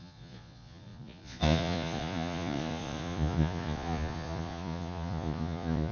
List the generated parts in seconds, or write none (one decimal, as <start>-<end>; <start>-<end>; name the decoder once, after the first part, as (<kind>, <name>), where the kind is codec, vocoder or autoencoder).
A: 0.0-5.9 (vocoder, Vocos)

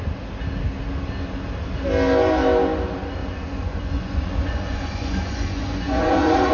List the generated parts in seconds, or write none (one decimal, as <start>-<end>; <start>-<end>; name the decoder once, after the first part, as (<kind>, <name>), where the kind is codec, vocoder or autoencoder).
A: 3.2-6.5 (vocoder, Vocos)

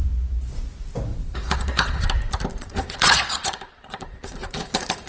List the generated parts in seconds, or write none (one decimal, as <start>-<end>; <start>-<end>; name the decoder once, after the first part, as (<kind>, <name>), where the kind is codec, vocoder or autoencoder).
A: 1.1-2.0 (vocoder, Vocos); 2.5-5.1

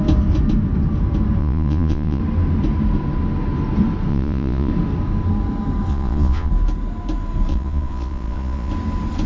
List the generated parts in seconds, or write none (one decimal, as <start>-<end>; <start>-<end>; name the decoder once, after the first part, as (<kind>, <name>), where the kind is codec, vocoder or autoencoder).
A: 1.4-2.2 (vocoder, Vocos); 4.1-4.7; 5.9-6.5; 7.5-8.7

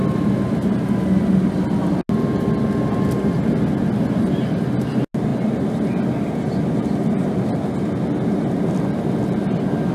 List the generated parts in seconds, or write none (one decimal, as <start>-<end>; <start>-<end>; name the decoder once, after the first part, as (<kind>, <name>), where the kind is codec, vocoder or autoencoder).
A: none

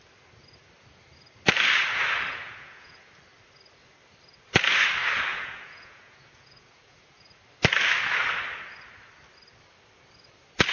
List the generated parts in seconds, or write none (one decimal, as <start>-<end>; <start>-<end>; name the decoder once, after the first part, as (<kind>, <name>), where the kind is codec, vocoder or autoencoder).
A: 2.3-3.1 (vocoder, Vocos); 5.3-7.4

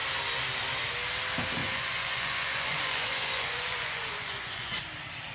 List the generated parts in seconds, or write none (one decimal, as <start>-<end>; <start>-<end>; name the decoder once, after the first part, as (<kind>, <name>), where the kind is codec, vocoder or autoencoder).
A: 1.6-4.8 (vocoder, Vocos)

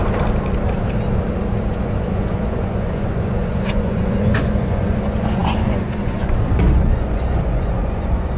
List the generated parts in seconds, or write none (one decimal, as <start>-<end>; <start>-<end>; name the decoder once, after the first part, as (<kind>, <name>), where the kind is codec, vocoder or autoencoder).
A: 1.5-8.4 (vocoder, Vocos)